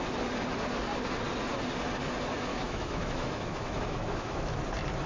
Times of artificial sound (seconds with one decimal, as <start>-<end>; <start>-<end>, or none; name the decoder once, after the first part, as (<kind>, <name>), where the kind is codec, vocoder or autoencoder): 2.5-4.6 (autoencoder, DAC-VAE)